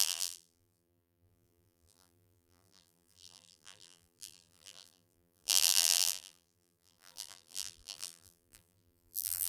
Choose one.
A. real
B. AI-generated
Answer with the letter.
B